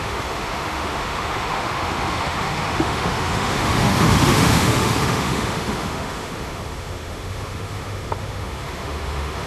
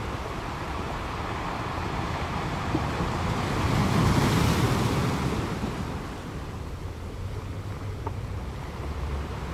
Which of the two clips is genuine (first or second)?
second